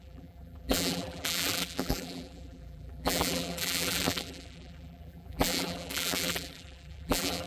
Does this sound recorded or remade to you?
remade